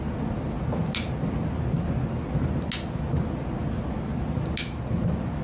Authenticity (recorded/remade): recorded